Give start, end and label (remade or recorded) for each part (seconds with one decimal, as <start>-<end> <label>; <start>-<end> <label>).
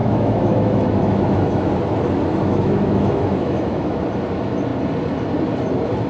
0.0-1.7 remade; 1.7-2.3 recorded; 2.3-4.0 remade; 4.0-6.1 recorded